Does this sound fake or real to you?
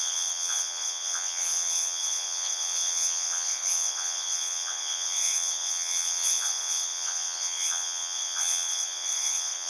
fake